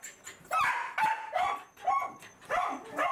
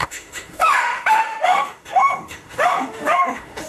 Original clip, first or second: first